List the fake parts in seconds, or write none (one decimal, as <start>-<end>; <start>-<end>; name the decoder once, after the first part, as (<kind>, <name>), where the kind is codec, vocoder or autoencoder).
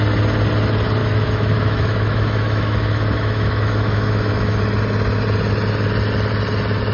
1.0-4.6 (autoencoder, DAC-VAE)